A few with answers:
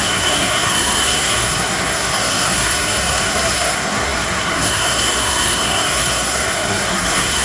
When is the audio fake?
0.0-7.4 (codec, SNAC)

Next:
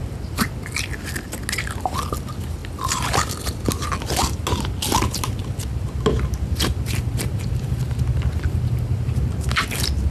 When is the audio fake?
none